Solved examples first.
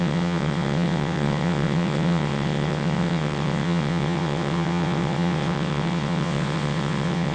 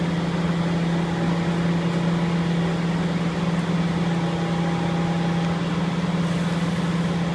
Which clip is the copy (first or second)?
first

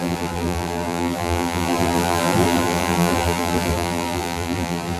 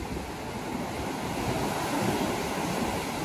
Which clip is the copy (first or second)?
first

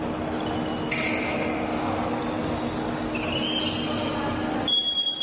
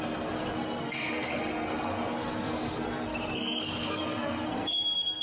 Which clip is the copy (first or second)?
second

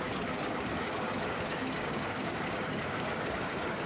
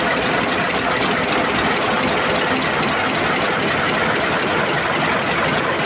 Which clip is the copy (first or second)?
first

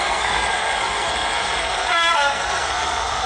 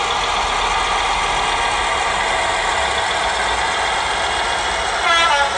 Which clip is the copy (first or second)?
first